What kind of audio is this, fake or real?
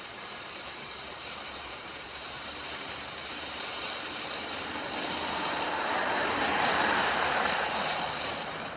fake